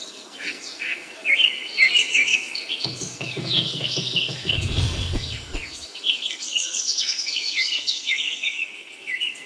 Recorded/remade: remade